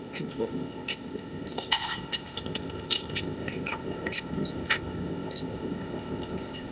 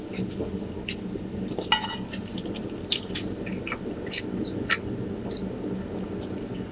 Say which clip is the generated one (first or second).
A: first